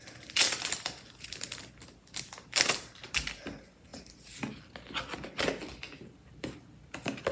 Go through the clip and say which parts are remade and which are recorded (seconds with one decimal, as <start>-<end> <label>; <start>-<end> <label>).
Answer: 0.0-7.3 recorded